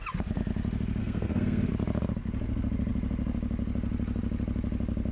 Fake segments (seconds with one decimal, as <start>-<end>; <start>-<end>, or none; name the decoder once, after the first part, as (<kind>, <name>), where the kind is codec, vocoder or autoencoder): 1.0-1.7 (codec, SNAC)